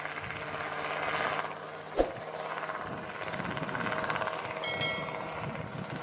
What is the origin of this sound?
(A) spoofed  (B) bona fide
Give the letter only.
B